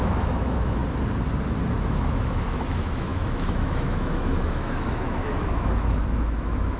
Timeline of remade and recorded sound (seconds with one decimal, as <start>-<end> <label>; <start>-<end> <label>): 0.0-0.8 remade; 0.8-1.8 recorded; 1.8-6.8 remade